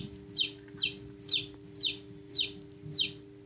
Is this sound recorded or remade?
recorded